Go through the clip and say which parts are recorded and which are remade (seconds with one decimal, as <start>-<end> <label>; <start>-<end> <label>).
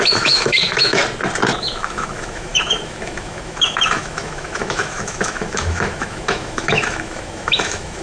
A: 0.0-1.0 remade; 1.0-1.6 recorded; 1.6-8.0 remade